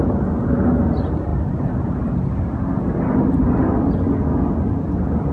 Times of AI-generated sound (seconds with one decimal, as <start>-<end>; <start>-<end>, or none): none